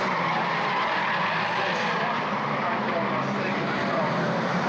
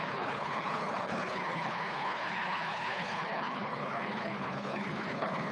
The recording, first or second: first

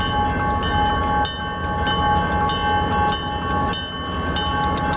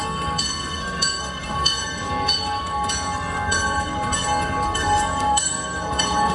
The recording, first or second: first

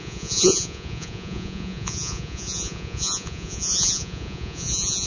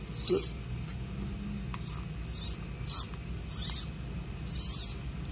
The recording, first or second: second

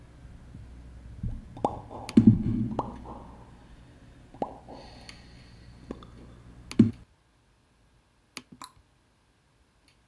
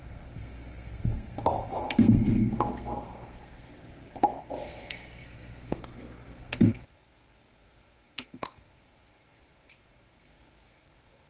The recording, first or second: first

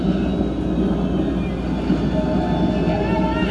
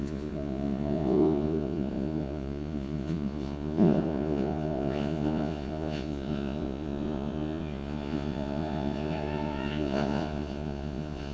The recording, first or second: first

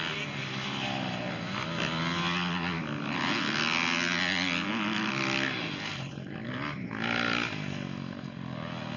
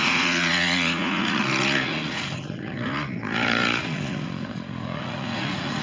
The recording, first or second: first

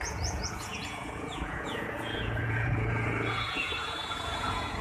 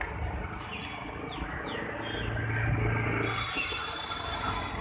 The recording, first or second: second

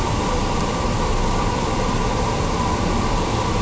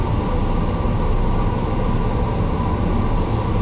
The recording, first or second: second